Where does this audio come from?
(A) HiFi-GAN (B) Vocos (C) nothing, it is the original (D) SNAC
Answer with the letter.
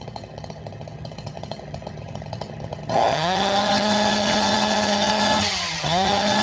A